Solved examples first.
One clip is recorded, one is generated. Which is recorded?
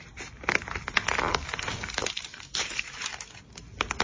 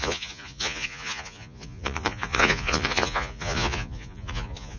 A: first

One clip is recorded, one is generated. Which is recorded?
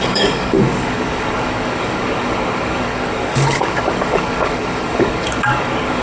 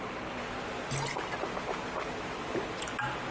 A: second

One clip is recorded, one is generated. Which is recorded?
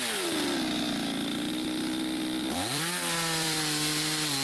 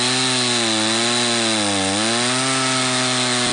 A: second